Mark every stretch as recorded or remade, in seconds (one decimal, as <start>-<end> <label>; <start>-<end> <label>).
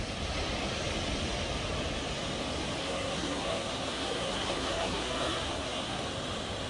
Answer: 0.0-2.8 recorded; 2.8-6.0 remade; 6.0-6.7 recorded